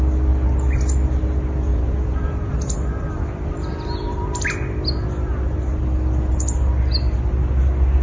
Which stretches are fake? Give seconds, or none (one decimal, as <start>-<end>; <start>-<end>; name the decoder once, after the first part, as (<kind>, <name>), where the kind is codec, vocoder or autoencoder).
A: 1.7-2.5 (vocoder, Vocos)